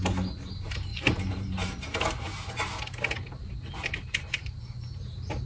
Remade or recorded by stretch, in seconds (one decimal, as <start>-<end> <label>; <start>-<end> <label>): 0.0-0.9 recorded; 0.9-2.6 remade; 2.6-3.4 recorded; 3.4-5.0 remade; 5.0-5.5 recorded